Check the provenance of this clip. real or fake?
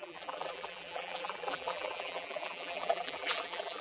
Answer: fake